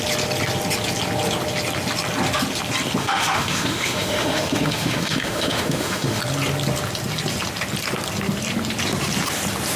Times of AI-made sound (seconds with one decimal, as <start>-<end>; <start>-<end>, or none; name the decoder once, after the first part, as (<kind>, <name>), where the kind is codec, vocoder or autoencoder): 3.0-6.2 (autoencoder, DAC-VAE)